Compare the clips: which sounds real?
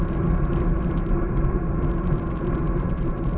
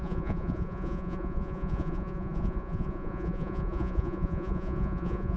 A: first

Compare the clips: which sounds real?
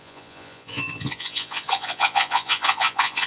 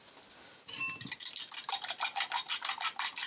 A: second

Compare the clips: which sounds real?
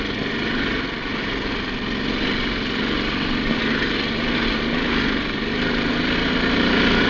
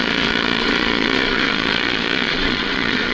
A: first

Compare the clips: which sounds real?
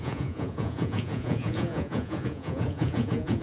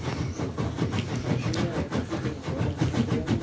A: second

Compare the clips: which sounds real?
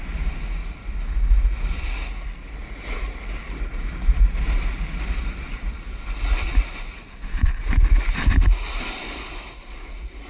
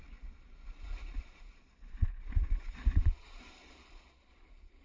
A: first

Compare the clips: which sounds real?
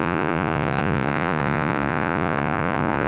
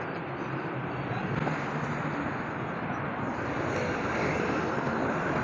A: second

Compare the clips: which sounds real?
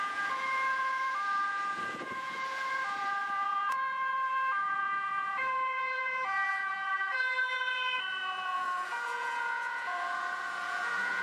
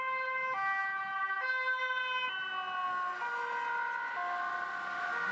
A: second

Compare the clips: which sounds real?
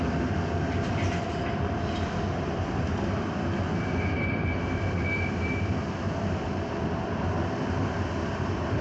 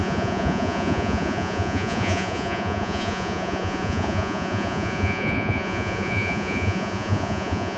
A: first